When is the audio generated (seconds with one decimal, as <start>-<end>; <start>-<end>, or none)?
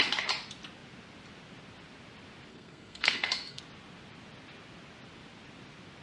2.5-3.6